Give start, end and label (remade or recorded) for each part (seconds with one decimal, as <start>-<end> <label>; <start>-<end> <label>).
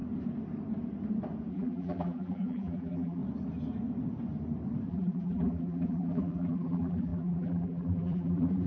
0.0-1.5 recorded; 1.5-3.2 remade; 3.2-4.9 recorded; 4.9-8.7 remade